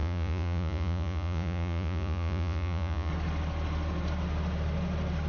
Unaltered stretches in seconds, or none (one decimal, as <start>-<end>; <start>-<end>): 3.1-5.3